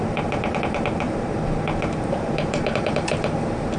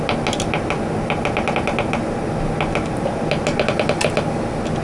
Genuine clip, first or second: second